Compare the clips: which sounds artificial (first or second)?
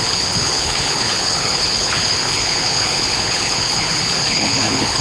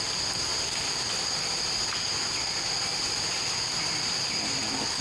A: first